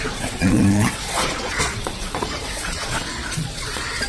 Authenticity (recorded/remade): remade